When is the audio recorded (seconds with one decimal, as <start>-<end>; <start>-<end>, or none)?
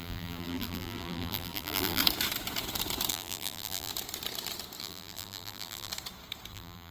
2.0-3.1; 3.9-4.8; 5.9-6.5